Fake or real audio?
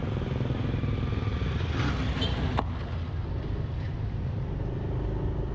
real